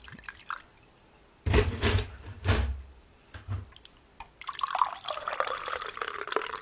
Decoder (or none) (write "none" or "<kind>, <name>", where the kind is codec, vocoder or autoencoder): vocoder, BigVGAN v2